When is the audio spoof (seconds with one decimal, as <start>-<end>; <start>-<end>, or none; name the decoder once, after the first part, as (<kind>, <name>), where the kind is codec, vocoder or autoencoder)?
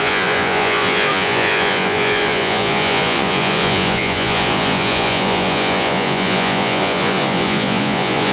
0.0-8.3 (vocoder, Vocos)